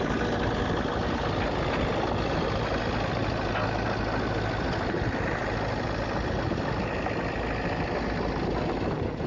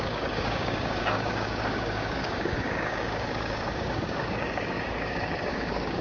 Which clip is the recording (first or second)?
first